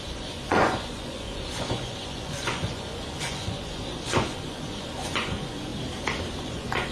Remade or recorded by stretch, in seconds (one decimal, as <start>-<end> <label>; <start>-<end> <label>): 0.0-5.7 remade; 5.7-6.4 recorded; 6.4-6.9 remade